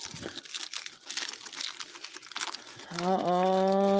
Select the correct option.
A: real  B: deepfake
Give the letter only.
A